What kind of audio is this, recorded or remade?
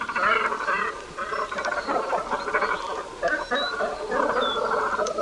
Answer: recorded